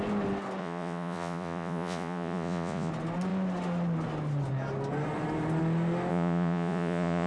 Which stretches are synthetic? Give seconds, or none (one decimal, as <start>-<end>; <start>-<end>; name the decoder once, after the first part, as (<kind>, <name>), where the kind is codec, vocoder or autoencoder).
0.6-2.9 (vocoder, Vocos); 6.1-7.3